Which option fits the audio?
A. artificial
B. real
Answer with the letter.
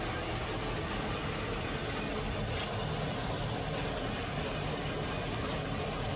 B